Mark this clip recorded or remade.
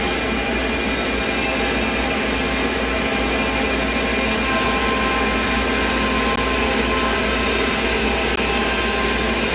recorded